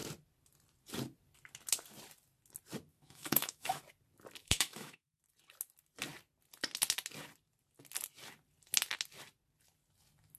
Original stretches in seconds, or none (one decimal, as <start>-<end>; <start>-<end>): 0.0-2.9; 3.8-4.4; 5.2-10.4